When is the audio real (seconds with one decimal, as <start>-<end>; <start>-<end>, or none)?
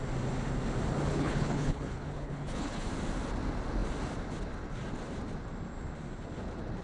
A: 0.0-1.1; 2.9-6.8